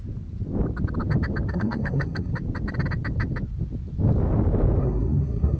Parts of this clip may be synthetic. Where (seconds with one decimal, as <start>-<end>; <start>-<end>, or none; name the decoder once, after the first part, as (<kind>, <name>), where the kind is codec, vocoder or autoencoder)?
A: 1.5-2.3 (codec, SNAC); 4.8-5.6